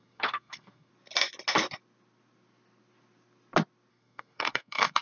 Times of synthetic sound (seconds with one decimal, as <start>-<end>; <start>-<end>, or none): 0.0-0.9; 3.9-5.0